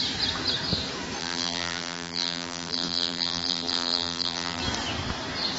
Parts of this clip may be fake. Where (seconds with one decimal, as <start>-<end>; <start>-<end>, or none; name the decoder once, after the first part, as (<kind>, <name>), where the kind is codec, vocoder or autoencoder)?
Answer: 1.2-4.6 (vocoder, BigVGAN v2)